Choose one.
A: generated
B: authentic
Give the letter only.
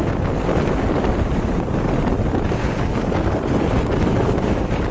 B